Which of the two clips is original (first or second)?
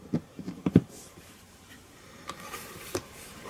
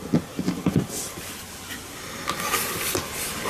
second